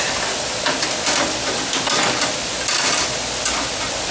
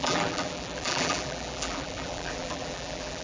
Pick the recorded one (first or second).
first